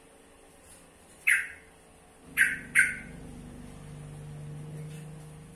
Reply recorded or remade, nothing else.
recorded